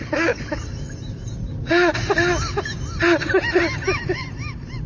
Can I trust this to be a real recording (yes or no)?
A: yes